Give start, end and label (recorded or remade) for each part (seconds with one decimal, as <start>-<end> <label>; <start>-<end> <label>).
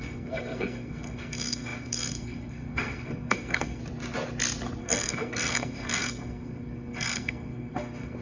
0.0-3.8 remade; 3.8-4.8 recorded; 4.8-8.2 remade